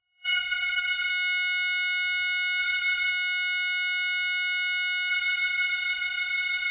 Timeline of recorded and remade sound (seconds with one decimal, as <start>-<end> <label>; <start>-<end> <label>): 0.0-1.1 remade; 1.1-2.6 recorded; 2.6-3.1 remade; 3.1-5.1 recorded; 5.1-6.7 remade